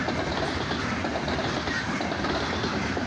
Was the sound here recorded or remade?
recorded